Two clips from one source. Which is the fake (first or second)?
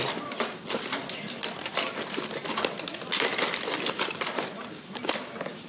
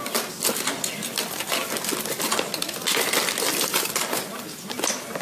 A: first